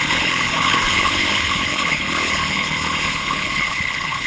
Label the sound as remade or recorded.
remade